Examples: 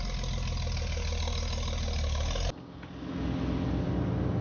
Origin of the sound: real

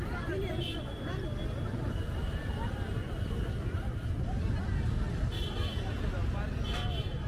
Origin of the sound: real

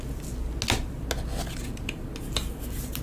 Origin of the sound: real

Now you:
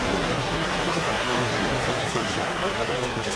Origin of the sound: fake